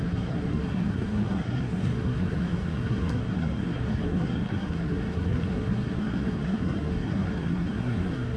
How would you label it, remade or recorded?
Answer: remade